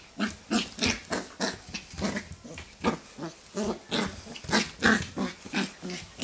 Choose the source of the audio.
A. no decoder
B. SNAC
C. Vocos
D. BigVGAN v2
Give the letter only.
A